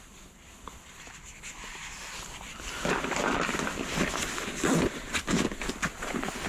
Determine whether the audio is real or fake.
real